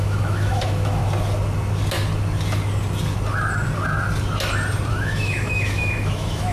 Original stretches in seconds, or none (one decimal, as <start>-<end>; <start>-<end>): 1.0-4.9